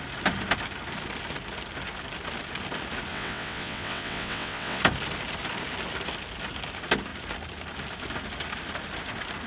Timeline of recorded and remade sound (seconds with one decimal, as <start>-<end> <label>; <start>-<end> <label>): 0.0-3.1 recorded; 3.1-4.8 remade; 4.8-9.5 recorded